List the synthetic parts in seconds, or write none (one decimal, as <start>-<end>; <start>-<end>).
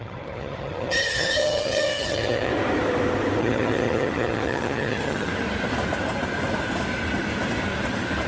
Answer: 0.0-2.5; 3.4-5.3